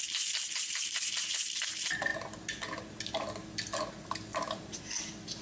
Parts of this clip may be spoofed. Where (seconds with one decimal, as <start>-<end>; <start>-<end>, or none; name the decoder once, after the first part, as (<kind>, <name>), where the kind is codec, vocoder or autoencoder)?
4.3-4.8 (vocoder, BigVGAN v2)

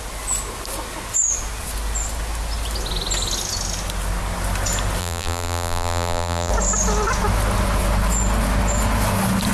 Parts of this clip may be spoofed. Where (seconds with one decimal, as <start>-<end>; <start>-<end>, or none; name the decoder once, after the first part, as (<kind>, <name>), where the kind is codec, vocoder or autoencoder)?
5.0-6.5 (vocoder, BigVGAN v2)

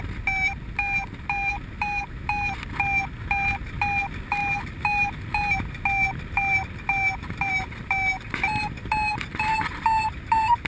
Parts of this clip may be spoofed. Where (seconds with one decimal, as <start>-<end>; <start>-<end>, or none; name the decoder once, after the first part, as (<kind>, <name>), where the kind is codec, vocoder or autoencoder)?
none

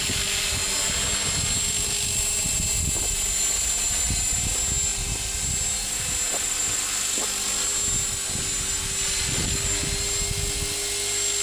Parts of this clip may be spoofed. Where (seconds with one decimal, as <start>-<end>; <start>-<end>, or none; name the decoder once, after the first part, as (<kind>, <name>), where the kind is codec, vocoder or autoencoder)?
4.9-5.6 (vocoder, BigVGAN v2)

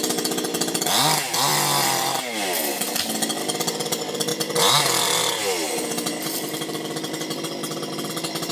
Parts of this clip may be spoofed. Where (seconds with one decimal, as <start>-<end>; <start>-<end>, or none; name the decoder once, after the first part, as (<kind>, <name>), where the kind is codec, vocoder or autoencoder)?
none